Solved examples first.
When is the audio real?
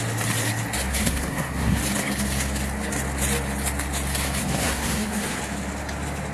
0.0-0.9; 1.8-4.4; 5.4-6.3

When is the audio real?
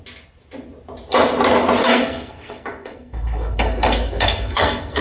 0.0-1.8